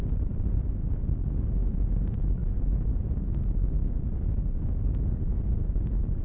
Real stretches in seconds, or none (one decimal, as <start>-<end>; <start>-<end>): 3.8-4.3